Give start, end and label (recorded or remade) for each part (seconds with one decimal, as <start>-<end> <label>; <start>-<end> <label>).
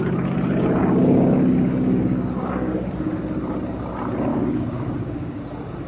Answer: 0.0-0.8 recorded; 0.8-3.2 remade; 3.2-4.3 recorded; 4.3-5.4 remade; 5.4-5.9 recorded